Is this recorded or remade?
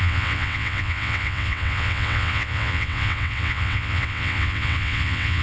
remade